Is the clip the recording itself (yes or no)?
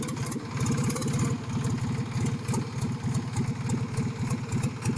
yes